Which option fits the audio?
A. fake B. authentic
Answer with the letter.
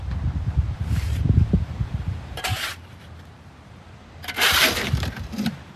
A